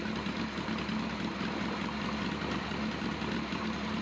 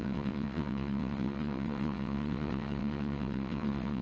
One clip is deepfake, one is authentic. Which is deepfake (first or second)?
second